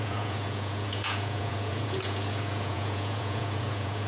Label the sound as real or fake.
fake